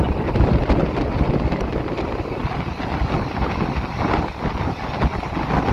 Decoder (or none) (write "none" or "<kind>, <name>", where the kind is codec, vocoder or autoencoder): none